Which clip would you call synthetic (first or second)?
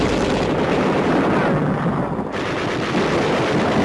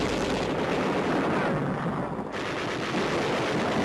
first